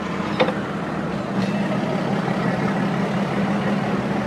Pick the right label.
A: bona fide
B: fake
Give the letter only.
A